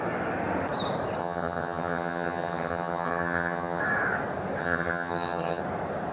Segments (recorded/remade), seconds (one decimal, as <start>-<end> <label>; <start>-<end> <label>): 0.0-1.2 recorded; 1.2-3.8 remade; 3.8-4.6 recorded; 4.6-5.6 remade; 5.6-6.1 recorded